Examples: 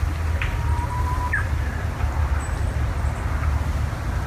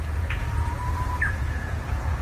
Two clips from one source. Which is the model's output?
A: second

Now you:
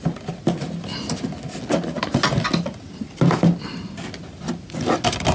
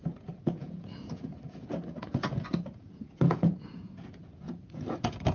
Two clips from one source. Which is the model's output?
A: second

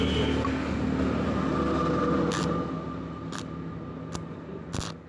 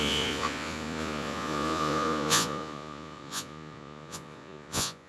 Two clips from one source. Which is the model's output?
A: second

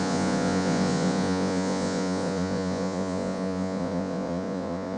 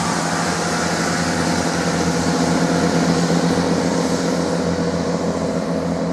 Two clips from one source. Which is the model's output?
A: first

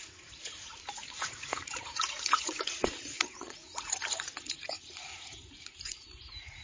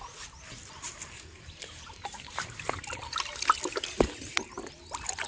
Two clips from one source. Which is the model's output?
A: first